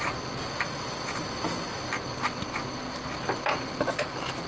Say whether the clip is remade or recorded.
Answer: recorded